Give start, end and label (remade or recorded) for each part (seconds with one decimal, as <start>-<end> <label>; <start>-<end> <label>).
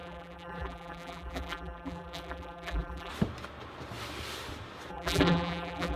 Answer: 0.0-3.1 remade; 3.1-4.9 recorded; 4.9-6.0 remade